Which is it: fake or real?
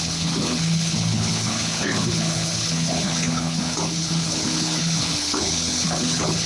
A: fake